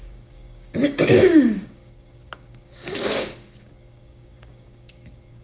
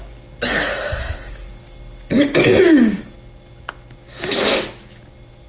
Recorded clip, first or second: second